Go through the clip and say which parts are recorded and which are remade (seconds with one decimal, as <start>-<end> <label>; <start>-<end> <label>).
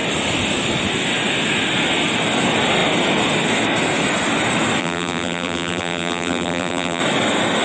0.0-4.8 recorded; 4.8-7.0 remade; 7.0-7.6 recorded